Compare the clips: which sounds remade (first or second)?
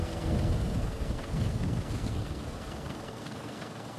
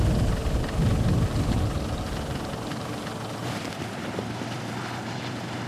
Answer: first